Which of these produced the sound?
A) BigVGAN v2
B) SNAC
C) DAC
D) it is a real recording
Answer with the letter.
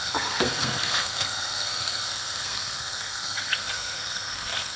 B